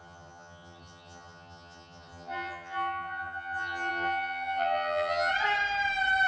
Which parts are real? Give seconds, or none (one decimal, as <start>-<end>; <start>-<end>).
5.3-6.3